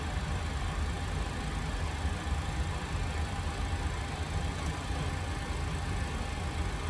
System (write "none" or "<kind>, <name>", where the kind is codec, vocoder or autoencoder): none